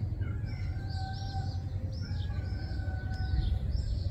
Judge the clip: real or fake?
real